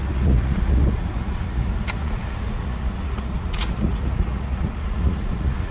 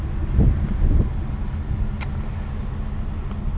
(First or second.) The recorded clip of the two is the second